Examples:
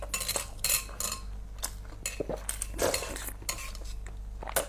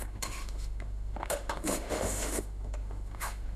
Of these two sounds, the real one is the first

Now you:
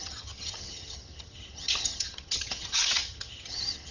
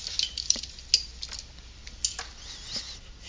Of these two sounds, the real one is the second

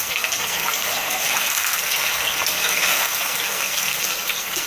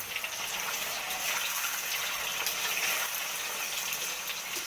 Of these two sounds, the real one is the second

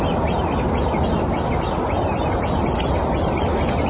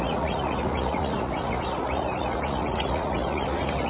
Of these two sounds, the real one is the first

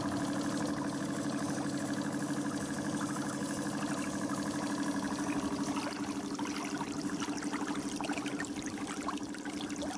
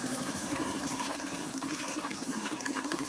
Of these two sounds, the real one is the first